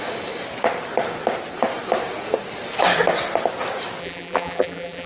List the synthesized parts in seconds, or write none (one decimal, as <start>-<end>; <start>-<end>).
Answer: 4.0-5.1